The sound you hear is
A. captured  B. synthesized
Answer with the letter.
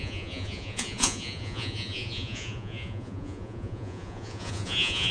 B